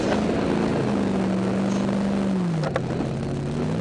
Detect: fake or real real